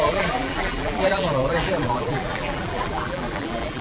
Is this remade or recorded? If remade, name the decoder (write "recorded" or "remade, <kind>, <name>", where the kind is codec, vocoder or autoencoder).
remade, vocoder, BigVGAN v2